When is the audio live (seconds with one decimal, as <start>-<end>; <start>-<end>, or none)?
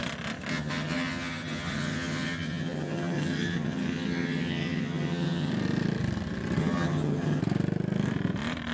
0.0-0.5; 5.5-6.6; 7.4-8.7